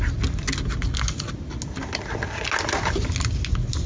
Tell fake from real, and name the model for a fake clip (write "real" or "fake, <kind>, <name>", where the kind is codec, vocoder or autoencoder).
real